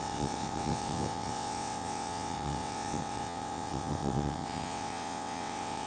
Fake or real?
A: fake